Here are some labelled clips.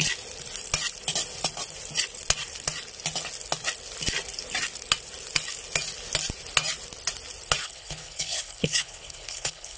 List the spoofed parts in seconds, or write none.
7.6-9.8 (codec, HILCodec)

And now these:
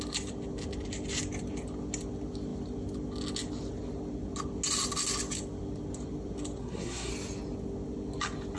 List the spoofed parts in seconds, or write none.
6.6-7.1 (codec, SNAC)

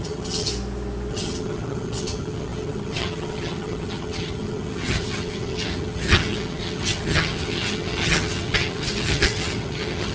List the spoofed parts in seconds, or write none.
0.0-0.5 (vocoder, HiFi-GAN); 1.1-10.1

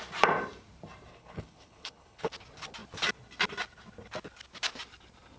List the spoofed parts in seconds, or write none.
1.1-2.3 (codec, HILCodec)

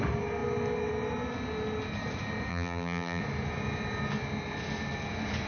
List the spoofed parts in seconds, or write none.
2.5-3.2 (vocoder, BigVGAN v2)